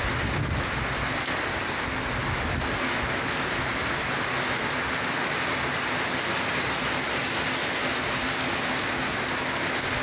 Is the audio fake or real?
real